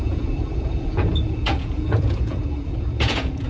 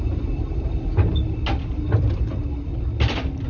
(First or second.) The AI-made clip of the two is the first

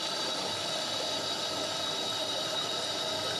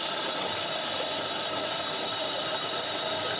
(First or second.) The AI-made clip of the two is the second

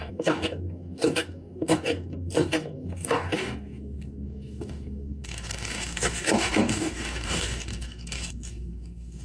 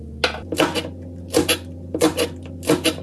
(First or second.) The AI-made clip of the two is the first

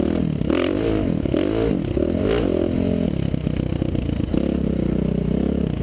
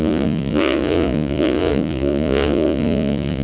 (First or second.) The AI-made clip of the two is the second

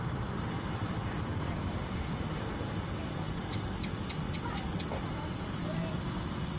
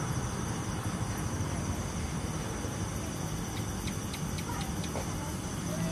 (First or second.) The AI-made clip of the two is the first